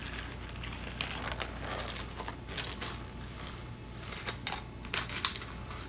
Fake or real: real